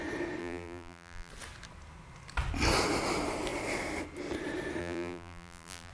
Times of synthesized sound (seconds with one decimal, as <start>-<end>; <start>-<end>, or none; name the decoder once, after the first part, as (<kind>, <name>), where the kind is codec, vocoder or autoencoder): 0.4-1.3 (vocoder, BigVGAN v2); 4.8-5.9